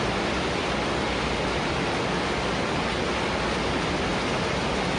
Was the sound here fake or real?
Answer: real